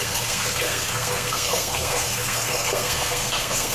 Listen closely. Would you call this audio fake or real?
fake